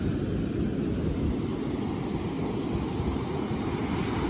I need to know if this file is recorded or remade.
recorded